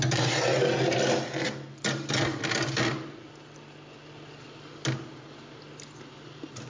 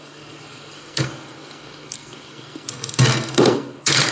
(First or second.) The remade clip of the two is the second